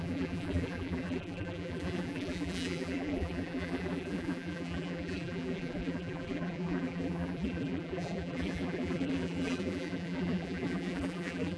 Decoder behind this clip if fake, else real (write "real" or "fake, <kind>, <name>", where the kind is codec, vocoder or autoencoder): fake, vocoder, BigVGAN v2